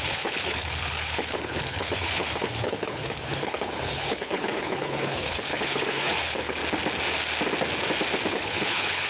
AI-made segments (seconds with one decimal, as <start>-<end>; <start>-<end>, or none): 0.0-6.6; 8.3-9.1